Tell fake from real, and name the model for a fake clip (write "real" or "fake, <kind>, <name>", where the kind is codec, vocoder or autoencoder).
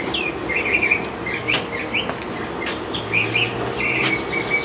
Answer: real